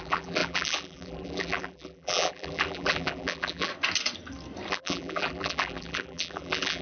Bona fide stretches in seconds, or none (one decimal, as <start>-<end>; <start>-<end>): 3.7-4.7